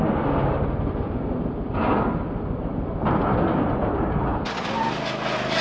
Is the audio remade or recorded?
recorded